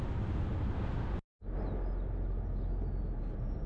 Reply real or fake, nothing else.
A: real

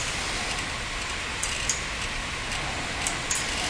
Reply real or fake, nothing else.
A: real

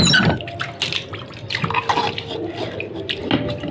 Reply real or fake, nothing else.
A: real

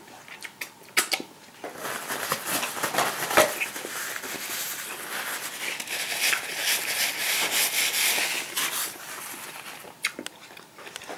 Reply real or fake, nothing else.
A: real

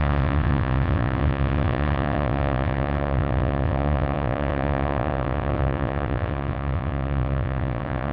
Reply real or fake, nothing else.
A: fake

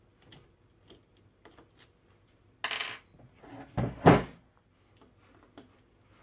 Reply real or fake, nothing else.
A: real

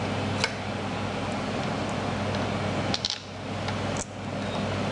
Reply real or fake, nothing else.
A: real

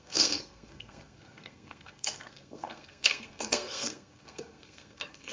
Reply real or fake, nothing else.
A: fake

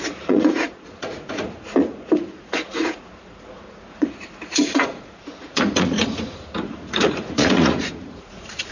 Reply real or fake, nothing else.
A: fake